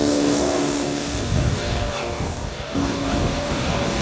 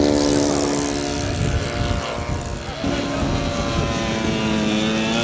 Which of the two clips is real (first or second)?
second